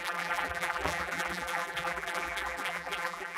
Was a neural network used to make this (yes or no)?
yes